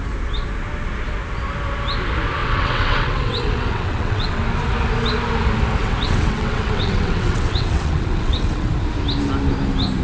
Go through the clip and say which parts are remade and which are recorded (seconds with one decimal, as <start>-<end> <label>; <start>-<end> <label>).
0.0-2.4 recorded; 2.4-4.4 remade; 4.4-5.8 recorded; 5.8-8.7 remade; 8.7-10.0 recorded